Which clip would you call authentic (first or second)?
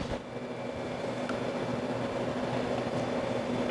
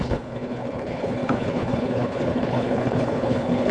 first